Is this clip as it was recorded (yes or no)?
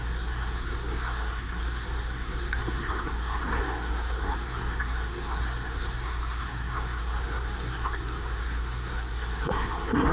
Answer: no